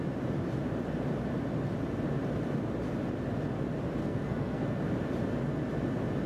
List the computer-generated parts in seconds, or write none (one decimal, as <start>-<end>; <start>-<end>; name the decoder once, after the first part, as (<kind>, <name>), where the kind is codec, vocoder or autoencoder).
4.0-4.8 (codec, SNAC)